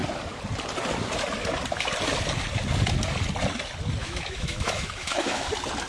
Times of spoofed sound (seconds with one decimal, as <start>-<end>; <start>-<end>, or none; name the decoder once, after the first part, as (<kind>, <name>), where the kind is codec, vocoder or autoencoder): 4.0-5.5 (autoencoder, DAC-VAE)

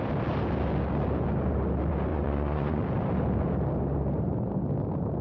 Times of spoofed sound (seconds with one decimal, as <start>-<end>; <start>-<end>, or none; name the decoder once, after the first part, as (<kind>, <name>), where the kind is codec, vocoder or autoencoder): 2.1-2.8 (vocoder, Vocos)

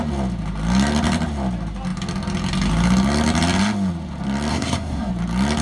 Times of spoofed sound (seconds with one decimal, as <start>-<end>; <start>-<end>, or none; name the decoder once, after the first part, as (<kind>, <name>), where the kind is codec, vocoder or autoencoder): 4.5-5.1 (codec, SNAC)